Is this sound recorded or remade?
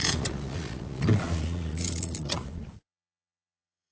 remade